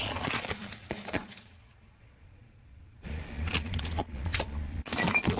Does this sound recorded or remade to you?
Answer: remade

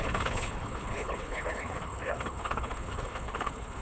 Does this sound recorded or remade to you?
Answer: remade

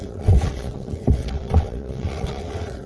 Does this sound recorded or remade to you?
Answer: remade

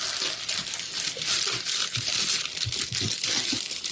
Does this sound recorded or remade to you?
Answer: recorded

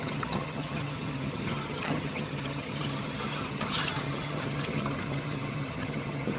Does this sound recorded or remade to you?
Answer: remade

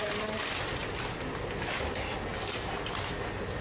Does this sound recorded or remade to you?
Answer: recorded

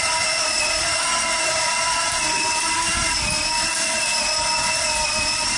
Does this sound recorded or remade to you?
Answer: recorded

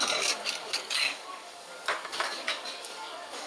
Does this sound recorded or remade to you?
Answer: remade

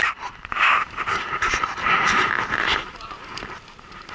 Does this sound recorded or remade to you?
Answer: remade